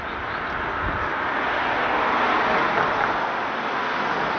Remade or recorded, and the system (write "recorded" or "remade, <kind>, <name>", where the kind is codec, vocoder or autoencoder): recorded